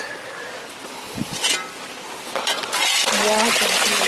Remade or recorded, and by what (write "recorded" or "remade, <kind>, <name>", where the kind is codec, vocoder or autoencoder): recorded